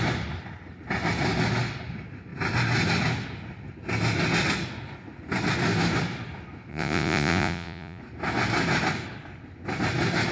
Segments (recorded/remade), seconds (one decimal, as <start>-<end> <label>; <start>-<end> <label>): 0.0-6.7 recorded; 6.7-8.0 remade; 8.0-10.3 recorded